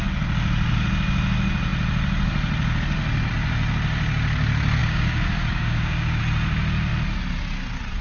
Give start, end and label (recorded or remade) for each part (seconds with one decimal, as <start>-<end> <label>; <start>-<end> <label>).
0.0-4.8 recorded; 4.8-6.2 remade; 6.2-8.0 recorded